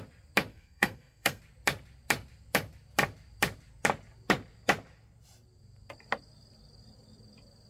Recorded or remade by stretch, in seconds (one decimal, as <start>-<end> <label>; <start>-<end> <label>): 0.0-0.5 recorded; 0.5-1.4 remade; 1.4-7.7 recorded

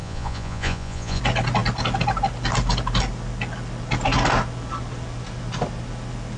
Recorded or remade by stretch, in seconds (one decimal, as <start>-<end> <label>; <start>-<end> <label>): 0.0-1.2 remade; 1.2-6.4 recorded

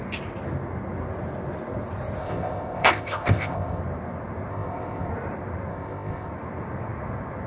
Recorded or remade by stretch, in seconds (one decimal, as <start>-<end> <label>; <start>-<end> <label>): 0.0-2.2 recorded; 2.2-3.8 remade; 3.8-4.5 recorded; 4.5-5.1 remade; 5.1-5.7 recorded; 5.7-6.3 remade; 6.3-7.5 recorded

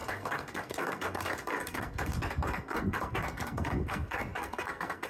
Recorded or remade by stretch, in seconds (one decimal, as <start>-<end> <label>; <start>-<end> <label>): 0.0-5.1 remade

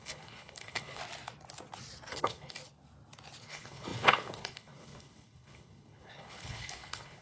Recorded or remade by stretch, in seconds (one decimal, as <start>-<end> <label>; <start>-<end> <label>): 0.0-1.0 remade; 1.0-2.1 recorded; 2.1-2.6 remade; 2.6-3.4 recorded; 3.4-7.2 remade

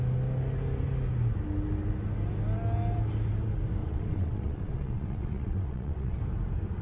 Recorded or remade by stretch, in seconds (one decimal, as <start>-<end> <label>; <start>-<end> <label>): 0.0-3.8 recorded; 3.8-6.2 remade; 6.2-6.8 recorded